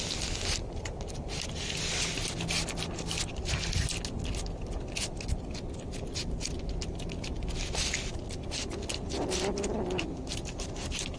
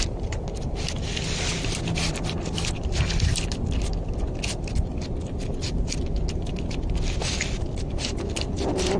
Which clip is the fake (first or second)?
second